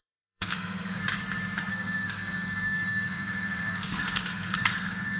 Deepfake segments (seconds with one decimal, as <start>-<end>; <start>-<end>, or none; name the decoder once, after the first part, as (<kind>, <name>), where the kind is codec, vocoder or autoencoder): 0.0-1.0 (codec, SNAC); 1.7-5.2